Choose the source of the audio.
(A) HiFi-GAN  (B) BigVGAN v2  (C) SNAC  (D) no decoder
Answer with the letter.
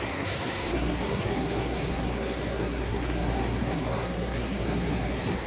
C